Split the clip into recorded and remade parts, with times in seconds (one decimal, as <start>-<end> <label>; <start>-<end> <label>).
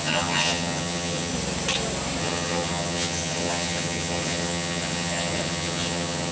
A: 0.0-1.3 remade; 1.3-2.2 recorded; 2.2-6.3 remade